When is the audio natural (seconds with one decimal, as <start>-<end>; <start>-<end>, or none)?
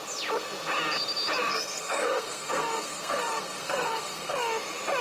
0.0-1.5; 4.5-5.0